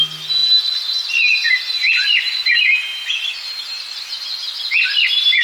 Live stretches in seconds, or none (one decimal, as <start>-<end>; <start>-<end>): 0.0-5.4